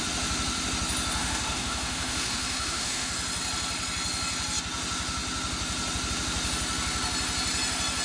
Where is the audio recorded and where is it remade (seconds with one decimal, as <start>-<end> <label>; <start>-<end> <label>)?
0.0-1.2 recorded; 1.2-3.1 remade; 3.1-8.0 recorded